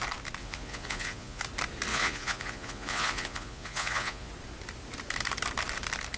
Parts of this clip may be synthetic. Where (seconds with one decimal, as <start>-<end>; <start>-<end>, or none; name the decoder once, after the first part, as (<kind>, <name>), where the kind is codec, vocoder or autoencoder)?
0.4-1.4 (vocoder, Vocos); 1.9-4.3